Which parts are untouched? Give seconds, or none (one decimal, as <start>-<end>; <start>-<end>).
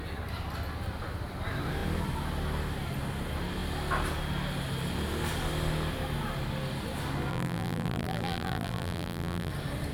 0.0-7.3; 9.5-9.9